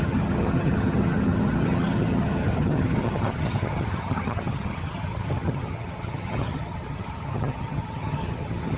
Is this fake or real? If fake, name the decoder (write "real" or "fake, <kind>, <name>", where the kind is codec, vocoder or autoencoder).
fake, vocoder, HiFi-GAN